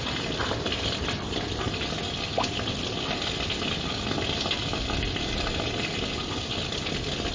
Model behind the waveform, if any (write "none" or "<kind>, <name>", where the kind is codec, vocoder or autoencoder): none